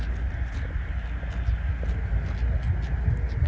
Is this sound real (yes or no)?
yes